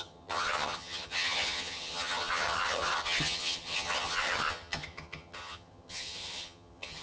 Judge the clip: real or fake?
fake